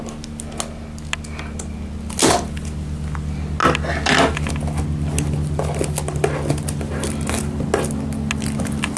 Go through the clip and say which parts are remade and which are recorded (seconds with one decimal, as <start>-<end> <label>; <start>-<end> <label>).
0.0-9.0 recorded